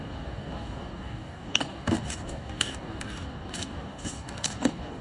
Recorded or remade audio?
remade